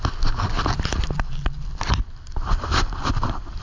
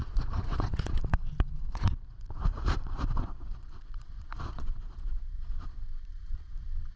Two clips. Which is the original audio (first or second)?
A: first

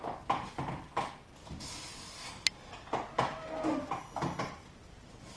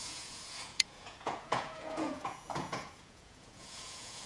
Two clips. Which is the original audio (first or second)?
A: first